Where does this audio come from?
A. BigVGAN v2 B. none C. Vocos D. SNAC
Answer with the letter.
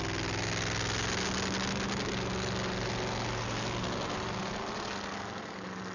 B